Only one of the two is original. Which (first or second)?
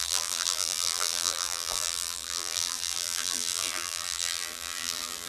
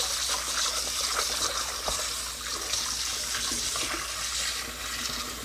second